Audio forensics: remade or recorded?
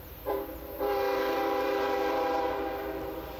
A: remade